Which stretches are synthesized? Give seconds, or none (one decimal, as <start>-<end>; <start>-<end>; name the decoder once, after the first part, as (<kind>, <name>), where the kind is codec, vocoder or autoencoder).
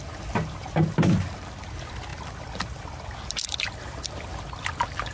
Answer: none